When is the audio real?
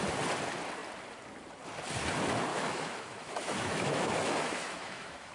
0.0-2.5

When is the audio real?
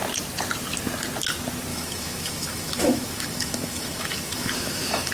0.0-1.7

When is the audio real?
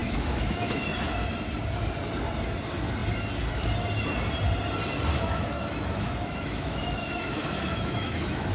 0.8-5.1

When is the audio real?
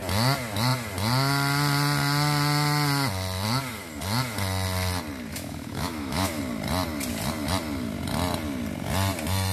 0.0-5.3; 6.4-9.5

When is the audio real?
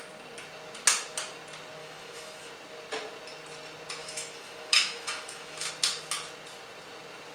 0.0-1.8; 2.5-4.0; 5.7-7.3